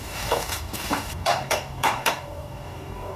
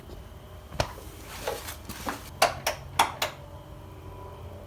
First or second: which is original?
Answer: second